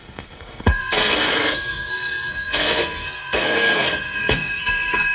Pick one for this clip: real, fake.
fake